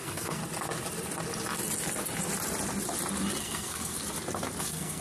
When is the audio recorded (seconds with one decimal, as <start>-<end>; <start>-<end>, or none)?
0.4-3.4; 4.0-4.6